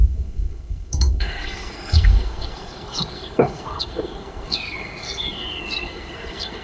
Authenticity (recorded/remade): remade